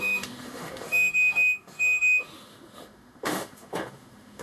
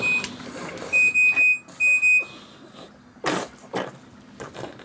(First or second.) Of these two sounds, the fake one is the first